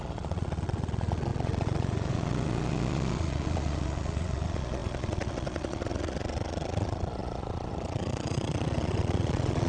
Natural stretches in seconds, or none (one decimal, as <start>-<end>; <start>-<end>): none